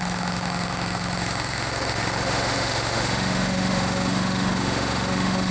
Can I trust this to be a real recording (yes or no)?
no